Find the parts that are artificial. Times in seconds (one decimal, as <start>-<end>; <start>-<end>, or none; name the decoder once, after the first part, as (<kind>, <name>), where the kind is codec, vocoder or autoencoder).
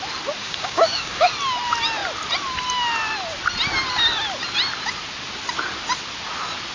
0.4-1.3 (codec, DAC)